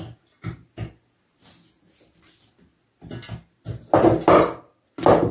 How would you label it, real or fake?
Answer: real